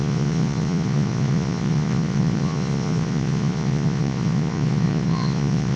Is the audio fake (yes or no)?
yes